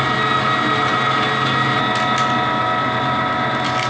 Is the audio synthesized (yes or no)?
no